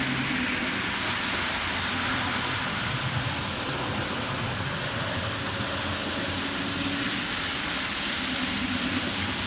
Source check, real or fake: real